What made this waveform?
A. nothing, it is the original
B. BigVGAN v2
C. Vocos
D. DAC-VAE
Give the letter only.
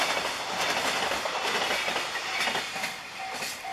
B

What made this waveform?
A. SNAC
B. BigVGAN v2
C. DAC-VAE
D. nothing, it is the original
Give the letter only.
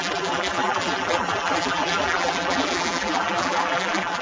B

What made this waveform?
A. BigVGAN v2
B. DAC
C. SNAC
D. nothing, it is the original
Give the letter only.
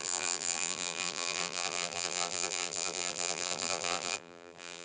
A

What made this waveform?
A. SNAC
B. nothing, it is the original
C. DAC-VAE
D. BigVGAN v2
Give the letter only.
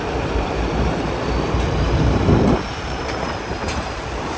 D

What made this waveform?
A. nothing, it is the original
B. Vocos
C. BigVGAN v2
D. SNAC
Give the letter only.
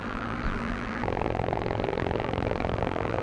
C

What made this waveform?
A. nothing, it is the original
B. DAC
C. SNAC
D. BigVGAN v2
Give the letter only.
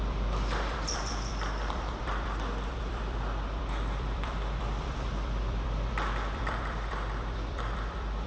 D